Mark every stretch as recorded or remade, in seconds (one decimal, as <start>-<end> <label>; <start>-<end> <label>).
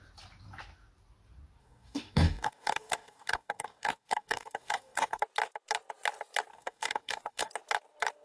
0.0-1.6 recorded; 1.6-5.2 remade; 5.2-6.5 recorded; 6.5-7.5 remade; 7.5-8.2 recorded